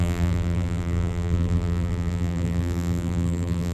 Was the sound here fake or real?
fake